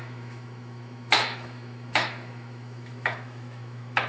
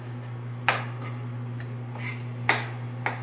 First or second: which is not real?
first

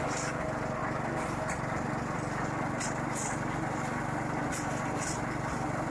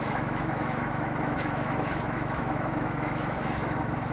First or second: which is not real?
second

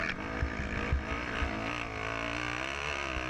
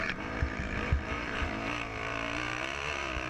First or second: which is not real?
second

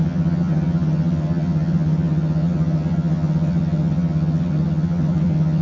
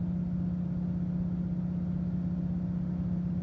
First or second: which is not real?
first